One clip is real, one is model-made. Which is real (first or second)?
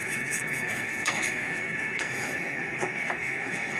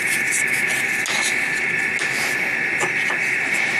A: second